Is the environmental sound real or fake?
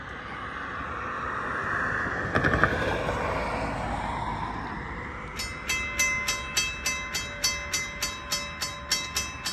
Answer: real